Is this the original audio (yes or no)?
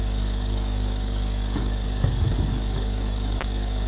no